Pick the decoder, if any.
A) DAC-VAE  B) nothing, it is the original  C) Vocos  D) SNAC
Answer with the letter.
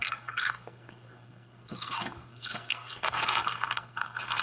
D